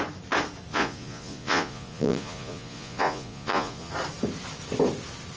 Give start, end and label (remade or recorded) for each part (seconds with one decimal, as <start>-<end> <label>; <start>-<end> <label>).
0.0-0.7 recorded; 0.7-3.9 remade; 3.9-5.4 recorded